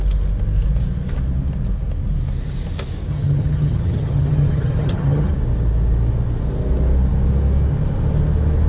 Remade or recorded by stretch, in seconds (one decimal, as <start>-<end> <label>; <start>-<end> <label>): 0.0-3.1 recorded; 3.1-5.3 remade; 5.3-8.7 recorded